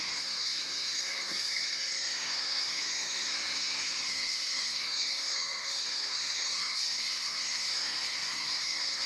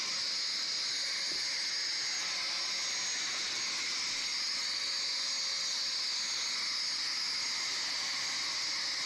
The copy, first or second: first